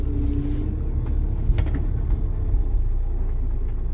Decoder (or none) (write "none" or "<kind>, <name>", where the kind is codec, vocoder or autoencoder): none